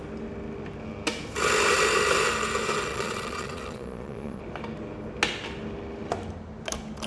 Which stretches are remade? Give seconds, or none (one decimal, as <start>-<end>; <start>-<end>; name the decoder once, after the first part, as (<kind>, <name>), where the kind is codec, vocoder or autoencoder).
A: 2.9-4.4 (vocoder, Vocos)